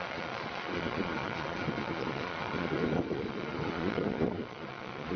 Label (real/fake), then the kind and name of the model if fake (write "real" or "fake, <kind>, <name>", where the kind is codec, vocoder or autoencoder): fake, vocoder, Vocos